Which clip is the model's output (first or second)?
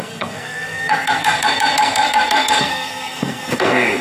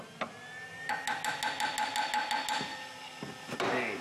first